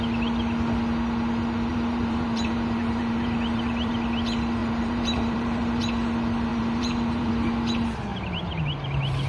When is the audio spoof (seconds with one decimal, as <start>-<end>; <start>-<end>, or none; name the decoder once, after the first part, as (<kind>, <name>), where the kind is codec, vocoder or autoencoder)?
1.7-3.9 (vocoder, BigVGAN v2); 4.6-5.8; 6.5-7.3; 8.1-8.6